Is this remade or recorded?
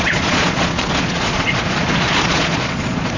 remade